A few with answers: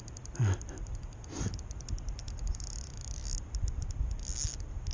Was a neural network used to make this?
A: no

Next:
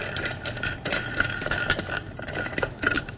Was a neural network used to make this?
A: no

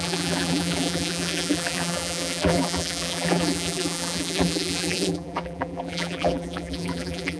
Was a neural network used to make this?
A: yes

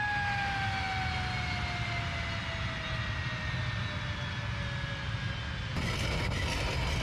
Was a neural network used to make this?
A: no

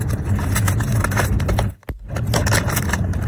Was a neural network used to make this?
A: no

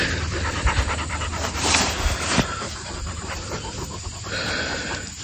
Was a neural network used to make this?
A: yes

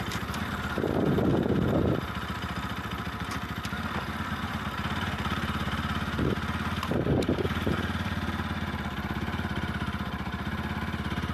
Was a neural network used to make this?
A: yes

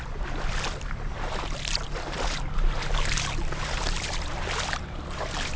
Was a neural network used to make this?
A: yes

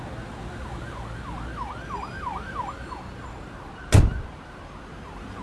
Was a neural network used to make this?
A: no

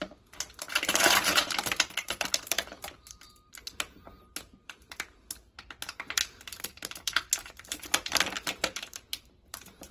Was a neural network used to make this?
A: yes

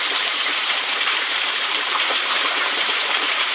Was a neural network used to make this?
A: yes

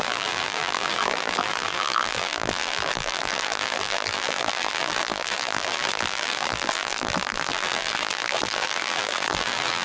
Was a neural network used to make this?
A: yes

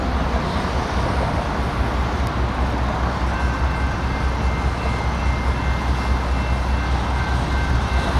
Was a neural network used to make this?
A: no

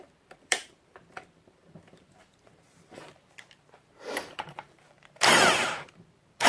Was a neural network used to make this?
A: yes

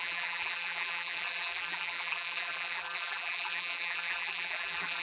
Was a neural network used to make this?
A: yes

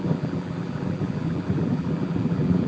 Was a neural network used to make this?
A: yes